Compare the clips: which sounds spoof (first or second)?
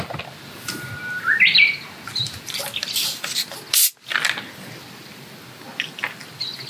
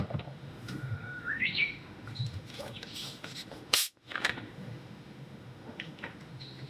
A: second